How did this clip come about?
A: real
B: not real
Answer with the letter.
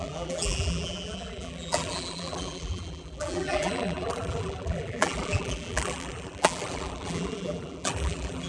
B